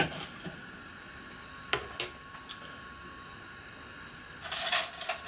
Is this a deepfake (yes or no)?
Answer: no